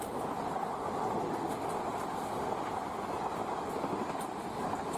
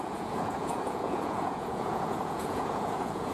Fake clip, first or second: second